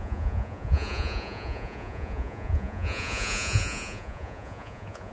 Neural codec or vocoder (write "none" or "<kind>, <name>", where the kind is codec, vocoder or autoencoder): vocoder, Vocos